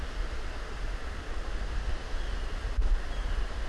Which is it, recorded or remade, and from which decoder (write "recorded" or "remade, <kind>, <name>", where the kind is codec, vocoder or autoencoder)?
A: recorded